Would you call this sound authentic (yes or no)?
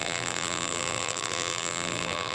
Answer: no